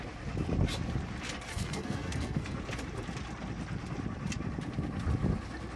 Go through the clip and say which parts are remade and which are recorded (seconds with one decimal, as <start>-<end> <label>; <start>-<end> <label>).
0.0-1.5 recorded; 1.5-2.6 remade; 2.6-5.8 recorded